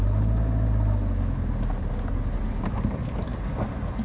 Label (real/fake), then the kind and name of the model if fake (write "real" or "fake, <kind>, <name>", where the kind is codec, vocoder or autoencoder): real